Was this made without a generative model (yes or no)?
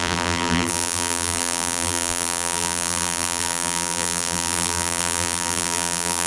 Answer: no